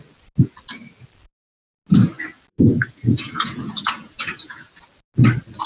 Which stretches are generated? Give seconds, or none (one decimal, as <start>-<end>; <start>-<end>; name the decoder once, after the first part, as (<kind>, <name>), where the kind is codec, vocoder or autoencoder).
2.5-4.7 (vocoder, Vocos)